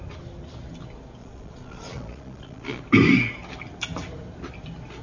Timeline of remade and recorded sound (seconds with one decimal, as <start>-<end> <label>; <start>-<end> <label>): 0.0-1.2 recorded; 1.2-2.8 remade; 2.8-5.0 recorded